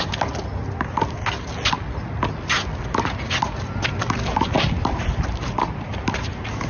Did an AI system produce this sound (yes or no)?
no